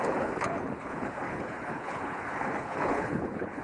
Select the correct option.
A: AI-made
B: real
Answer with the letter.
A